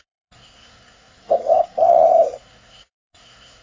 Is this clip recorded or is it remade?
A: remade